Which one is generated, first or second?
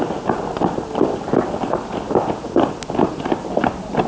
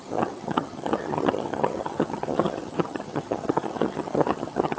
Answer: second